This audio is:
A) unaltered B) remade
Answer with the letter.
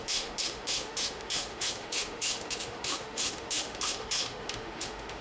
B